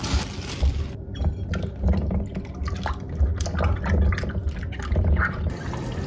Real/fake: real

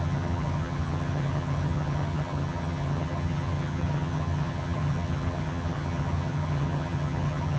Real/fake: fake